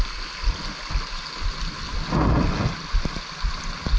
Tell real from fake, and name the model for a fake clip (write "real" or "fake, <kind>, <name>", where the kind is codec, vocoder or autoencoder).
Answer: real